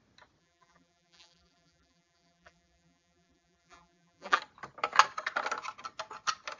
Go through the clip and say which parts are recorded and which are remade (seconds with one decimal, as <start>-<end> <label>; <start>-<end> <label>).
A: 0.0-0.4 recorded; 0.4-4.4 remade; 4.4-6.6 recorded